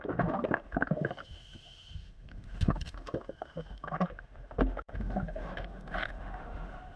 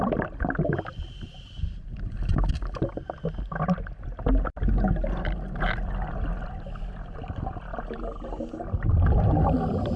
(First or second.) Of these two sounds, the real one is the second